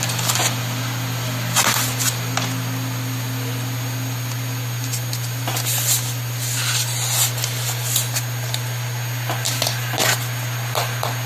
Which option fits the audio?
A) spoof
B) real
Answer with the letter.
B